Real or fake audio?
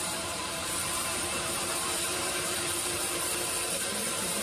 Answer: fake